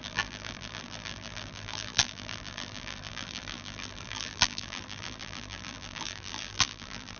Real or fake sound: fake